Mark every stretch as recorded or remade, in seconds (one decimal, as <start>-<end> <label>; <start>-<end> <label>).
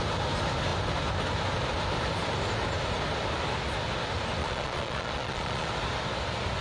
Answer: 0.0-4.4 recorded; 4.4-5.7 remade; 5.7-6.6 recorded